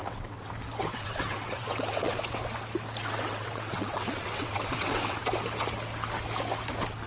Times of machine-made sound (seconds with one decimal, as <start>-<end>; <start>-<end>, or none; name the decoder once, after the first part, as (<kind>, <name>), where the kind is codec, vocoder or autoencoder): 0.0-0.5 (vocoder, WaveNeXt); 0.9-2.2; 3.0-5.2